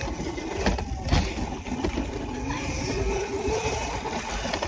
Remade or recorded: recorded